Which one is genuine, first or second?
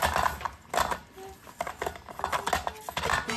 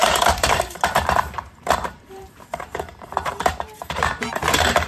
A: first